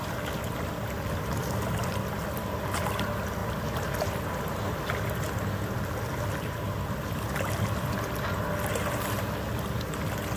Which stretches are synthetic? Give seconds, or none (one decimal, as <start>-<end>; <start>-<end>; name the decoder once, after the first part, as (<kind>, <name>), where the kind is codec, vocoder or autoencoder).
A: none